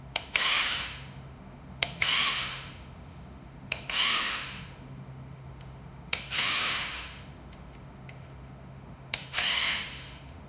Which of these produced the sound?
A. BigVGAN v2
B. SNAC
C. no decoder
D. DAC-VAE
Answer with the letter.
D